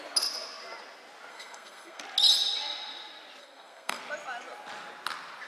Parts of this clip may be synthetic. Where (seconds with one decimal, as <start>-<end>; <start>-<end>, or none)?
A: 1.3-2.0; 3.4-4.0